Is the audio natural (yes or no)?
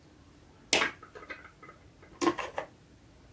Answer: yes